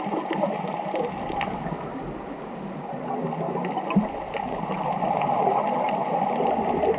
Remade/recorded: recorded